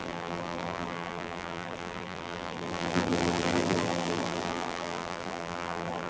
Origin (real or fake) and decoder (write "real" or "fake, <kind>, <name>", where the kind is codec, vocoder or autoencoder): fake, vocoder, BigVGAN v2